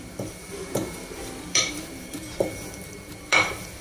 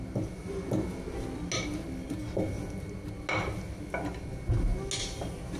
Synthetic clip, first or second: first